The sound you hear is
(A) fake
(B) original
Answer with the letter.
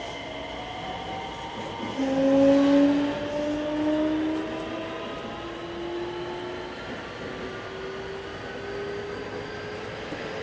B